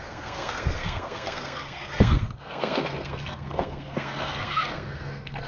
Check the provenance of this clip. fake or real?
fake